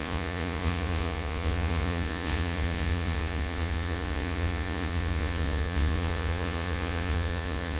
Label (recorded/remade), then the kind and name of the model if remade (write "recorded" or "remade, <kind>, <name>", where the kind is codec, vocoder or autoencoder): remade, vocoder, Vocos